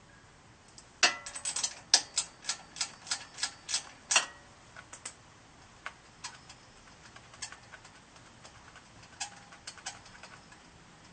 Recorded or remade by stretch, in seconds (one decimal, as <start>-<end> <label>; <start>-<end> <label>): 0.0-11.1 recorded